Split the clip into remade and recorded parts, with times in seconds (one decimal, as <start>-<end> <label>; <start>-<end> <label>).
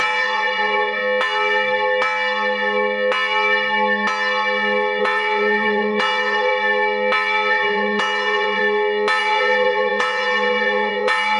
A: 0.0-1.0 remade; 1.0-5.0 recorded; 5.0-6.5 remade; 6.5-7.5 recorded; 7.5-8.6 remade; 8.6-9.2 recorded; 9.2-11.4 remade